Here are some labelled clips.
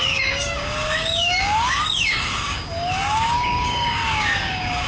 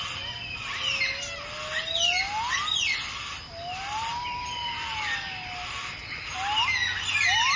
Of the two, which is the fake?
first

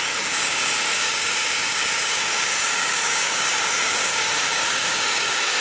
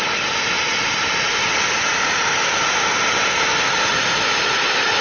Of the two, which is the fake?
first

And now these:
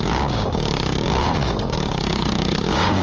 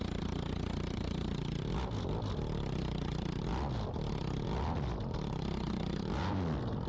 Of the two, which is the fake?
first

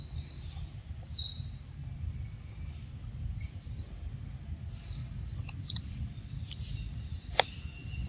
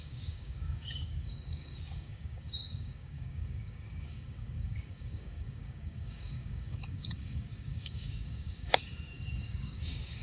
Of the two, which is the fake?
second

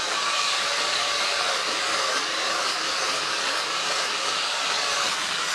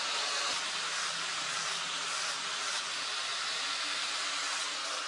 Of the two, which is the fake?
first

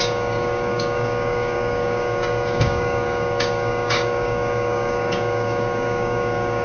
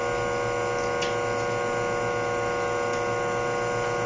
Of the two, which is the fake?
first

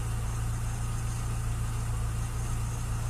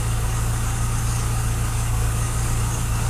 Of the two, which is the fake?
second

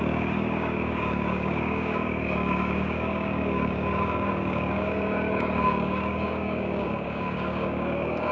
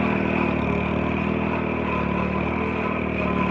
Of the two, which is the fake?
first